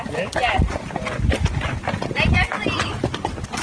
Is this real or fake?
real